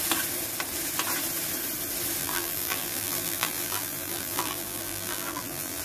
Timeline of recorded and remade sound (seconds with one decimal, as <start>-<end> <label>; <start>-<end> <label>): 0.0-2.2 recorded; 2.2-5.8 remade